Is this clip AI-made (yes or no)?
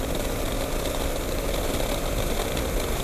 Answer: no